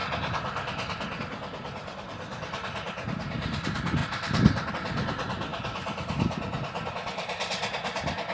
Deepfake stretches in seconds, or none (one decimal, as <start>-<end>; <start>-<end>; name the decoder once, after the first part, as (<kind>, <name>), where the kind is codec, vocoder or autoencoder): none